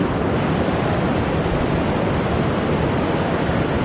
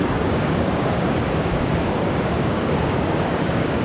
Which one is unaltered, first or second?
first